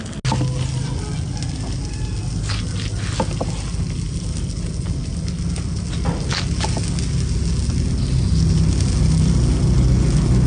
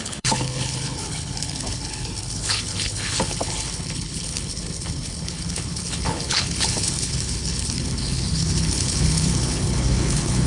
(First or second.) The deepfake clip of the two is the second